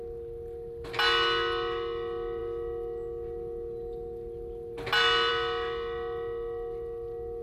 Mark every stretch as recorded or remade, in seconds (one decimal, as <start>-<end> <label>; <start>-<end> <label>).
0.0-7.4 recorded